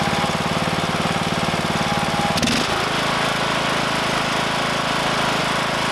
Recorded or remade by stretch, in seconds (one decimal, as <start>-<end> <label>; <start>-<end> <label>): 0.0-5.9 recorded